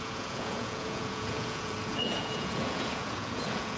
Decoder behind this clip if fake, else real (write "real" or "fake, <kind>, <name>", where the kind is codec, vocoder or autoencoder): fake, vocoder, Vocos